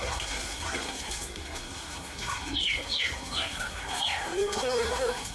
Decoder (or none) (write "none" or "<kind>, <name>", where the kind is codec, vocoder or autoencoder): codec, SNAC